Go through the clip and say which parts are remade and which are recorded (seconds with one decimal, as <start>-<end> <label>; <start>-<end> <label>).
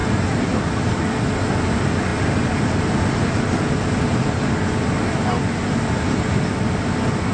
0.0-7.3 recorded